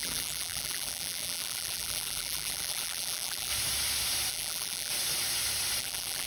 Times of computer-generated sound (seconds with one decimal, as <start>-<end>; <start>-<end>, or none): 0.0-3.5; 4.3-4.9; 5.8-6.3